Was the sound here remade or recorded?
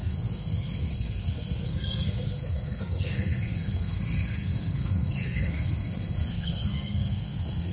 remade